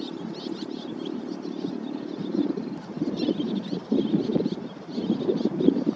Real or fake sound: real